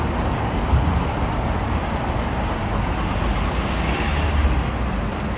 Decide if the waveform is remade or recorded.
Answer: recorded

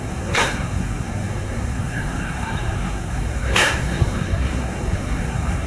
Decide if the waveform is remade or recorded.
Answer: remade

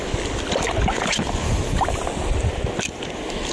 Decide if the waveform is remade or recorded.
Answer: recorded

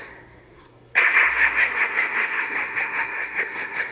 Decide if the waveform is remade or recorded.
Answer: remade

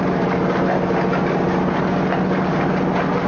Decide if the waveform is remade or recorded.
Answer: recorded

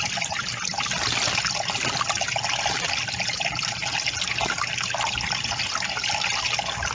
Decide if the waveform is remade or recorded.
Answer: recorded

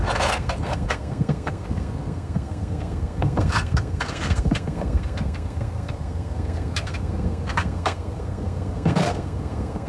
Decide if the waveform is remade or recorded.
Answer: remade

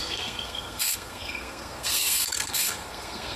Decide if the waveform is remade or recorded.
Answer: remade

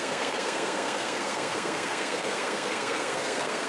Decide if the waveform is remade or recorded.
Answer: remade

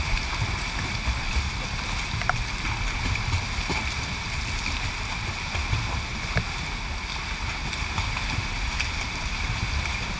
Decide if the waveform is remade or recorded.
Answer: recorded